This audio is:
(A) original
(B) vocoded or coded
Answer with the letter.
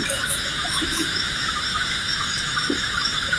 B